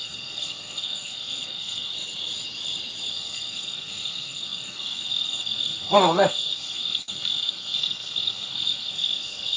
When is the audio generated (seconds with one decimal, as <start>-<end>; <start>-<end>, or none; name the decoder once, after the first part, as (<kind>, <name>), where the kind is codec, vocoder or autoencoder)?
0.0-1.9 (codec, SNAC); 3.1-9.6